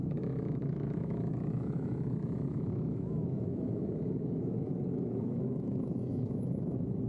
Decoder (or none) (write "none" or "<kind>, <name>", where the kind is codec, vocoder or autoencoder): autoencoder, DAC-VAE